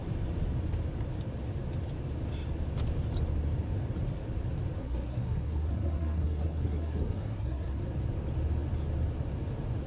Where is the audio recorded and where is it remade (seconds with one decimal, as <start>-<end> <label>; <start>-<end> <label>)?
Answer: 0.0-4.8 recorded; 4.8-7.8 remade; 7.8-9.9 recorded